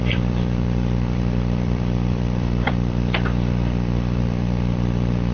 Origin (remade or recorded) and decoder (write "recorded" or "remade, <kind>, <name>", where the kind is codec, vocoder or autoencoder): remade, vocoder, BigVGAN v2